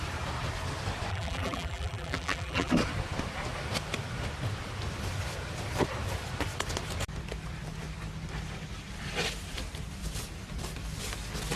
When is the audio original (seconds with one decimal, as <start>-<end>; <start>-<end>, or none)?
0.0-1.1; 2.7-11.6